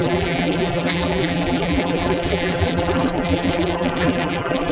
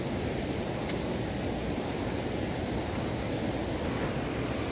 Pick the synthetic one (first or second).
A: first